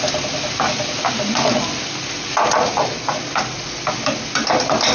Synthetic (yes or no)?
yes